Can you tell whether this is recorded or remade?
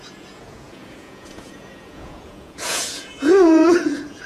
remade